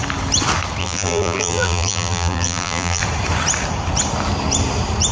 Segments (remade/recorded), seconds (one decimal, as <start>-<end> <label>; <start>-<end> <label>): 0.0-0.8 recorded; 0.8-3.0 remade; 3.0-5.1 recorded